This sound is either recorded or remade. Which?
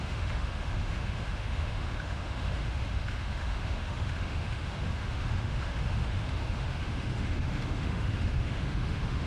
remade